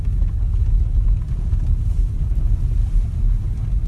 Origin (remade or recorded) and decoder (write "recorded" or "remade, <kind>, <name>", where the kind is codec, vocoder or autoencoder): recorded